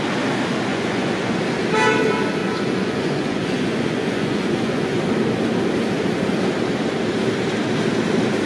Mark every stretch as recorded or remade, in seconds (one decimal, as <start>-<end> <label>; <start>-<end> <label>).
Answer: 0.0-0.7 recorded; 0.7-1.4 remade; 1.4-2.4 recorded; 2.4-5.0 remade; 5.0-8.5 recorded